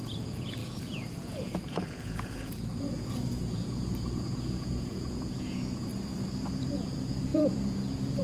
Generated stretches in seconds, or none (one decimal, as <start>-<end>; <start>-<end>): 0.0-5.9; 6.5-8.2